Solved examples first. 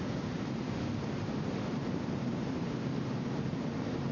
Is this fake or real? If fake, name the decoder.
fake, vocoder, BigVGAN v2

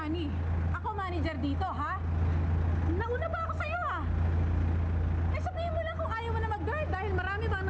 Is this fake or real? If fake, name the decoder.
real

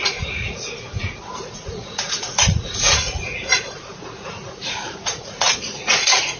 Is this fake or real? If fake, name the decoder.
fake, vocoder, Vocos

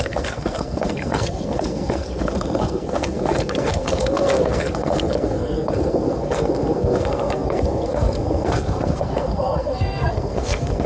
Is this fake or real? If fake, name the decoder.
fake, codec, SNAC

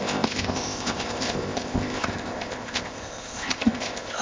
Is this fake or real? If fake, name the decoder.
fake, codec, ZipCodec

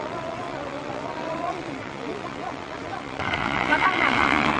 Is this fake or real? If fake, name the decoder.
fake, vocoder, WaveNeXt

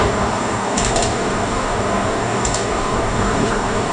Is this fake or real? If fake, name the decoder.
fake, codec, DAC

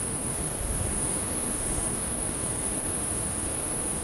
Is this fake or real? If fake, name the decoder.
fake, autoencoder, DAC-VAE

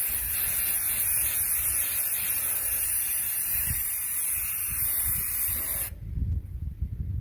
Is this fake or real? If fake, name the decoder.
real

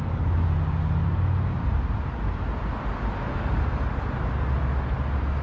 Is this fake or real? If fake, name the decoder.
real